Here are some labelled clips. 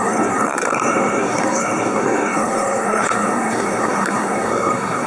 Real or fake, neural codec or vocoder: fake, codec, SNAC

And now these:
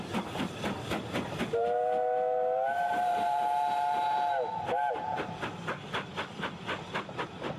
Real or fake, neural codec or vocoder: real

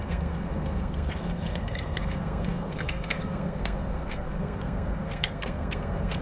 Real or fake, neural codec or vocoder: fake, codec, SNAC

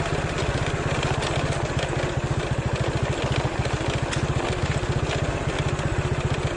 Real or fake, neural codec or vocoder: real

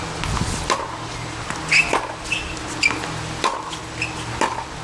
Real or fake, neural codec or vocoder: real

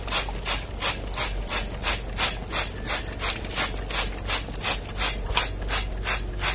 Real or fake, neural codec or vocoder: real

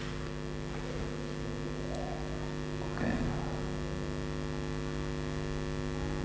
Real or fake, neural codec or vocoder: real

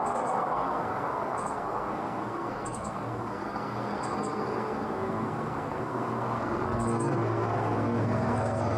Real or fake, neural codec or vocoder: fake, codec, SNAC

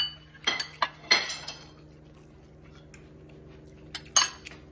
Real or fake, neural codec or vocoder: real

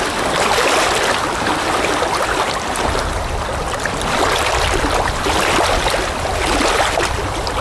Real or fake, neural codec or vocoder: real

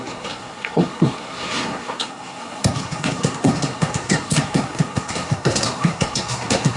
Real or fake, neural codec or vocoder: fake, codec, SNAC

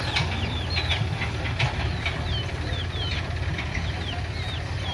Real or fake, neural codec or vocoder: real